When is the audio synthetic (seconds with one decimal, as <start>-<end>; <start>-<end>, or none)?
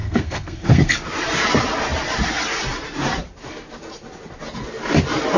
0.0-0.9